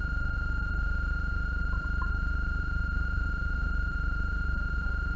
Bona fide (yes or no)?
no